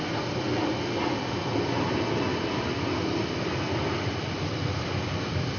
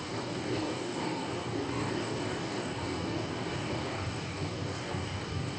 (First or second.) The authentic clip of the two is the first